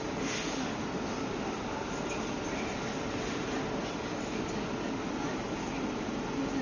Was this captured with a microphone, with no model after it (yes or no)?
yes